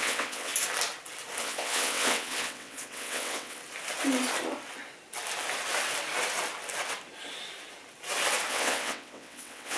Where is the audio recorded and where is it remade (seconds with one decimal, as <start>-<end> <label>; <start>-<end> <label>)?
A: 0.0-0.5 remade; 0.5-1.4 recorded; 1.4-3.6 remade; 3.6-8.5 recorded; 8.5-9.8 remade